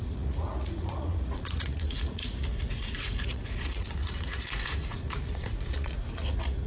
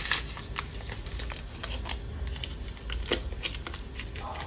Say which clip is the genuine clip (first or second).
second